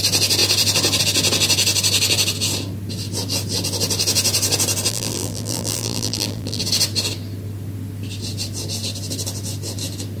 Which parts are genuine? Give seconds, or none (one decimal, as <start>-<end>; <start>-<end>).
0.0-4.9; 6.6-10.2